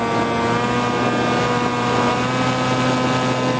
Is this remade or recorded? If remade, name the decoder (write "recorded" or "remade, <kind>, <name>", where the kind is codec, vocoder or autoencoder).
recorded